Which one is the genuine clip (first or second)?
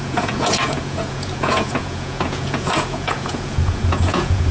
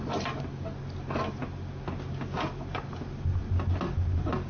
second